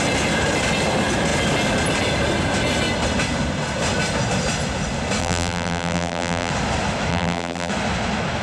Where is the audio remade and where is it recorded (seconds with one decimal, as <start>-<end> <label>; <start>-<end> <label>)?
0.0-5.2 recorded; 5.2-6.5 remade; 6.5-7.1 recorded; 7.1-7.7 remade; 7.7-8.4 recorded

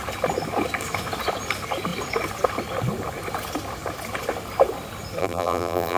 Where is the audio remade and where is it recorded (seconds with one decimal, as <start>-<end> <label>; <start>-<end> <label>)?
0.0-5.2 recorded; 5.2-6.0 remade

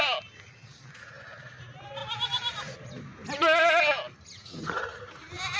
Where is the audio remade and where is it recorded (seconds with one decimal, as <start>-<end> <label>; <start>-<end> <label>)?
0.0-5.6 recorded

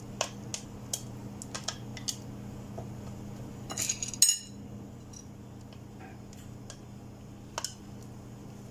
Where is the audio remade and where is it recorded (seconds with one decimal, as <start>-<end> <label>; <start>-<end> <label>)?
0.0-8.7 recorded

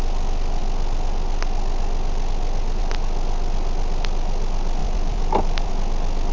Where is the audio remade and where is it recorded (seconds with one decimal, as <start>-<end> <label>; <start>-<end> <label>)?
0.0-4.8 recorded; 4.8-5.7 remade; 5.7-6.3 recorded